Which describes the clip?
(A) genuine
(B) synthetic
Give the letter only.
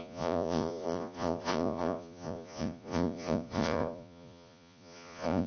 B